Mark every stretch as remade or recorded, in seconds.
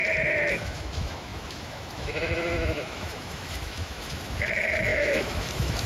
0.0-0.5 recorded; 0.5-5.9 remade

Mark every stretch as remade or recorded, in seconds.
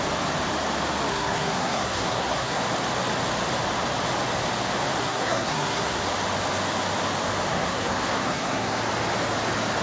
0.0-1.1 recorded; 1.1-2.6 remade; 2.6-5.0 recorded; 5.0-6.0 remade; 6.0-7.5 recorded; 7.5-8.8 remade; 8.8-9.8 recorded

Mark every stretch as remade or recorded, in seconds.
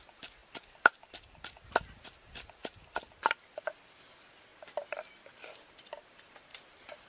0.0-4.5 recorded; 4.5-5.0 remade; 5.0-6.5 recorded; 6.5-7.1 remade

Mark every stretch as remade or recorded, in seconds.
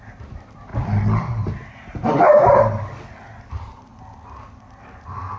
0.0-5.4 recorded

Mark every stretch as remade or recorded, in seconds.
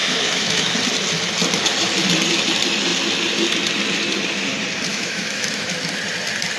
0.0-0.7 remade; 0.7-4.9 recorded; 4.9-5.7 remade; 5.7-6.6 recorded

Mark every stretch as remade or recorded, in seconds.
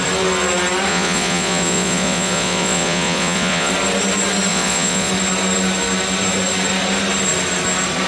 0.0-0.9 recorded; 0.9-3.7 remade; 3.7-4.5 recorded; 4.5-5.1 remade; 5.1-8.1 recorded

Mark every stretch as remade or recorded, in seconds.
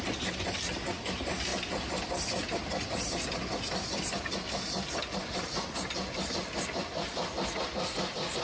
0.0-8.4 recorded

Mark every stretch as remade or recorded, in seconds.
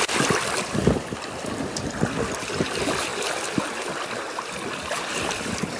0.0-5.8 recorded